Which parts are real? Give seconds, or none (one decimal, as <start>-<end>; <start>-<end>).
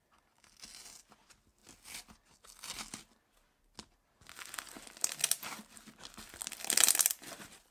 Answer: 0.0-7.7